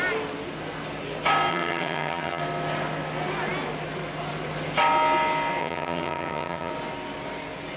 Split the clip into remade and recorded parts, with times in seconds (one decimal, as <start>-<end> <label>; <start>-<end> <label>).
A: 0.0-1.5 recorded; 1.5-2.4 remade; 2.4-5.6 recorded; 5.6-6.7 remade; 6.7-7.8 recorded